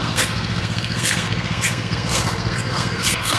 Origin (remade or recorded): remade